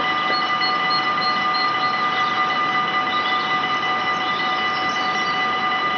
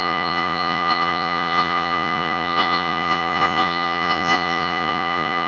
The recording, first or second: first